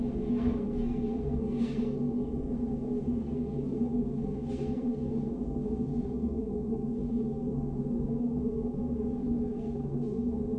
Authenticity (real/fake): fake